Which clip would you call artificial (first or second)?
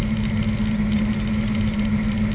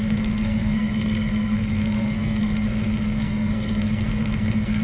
second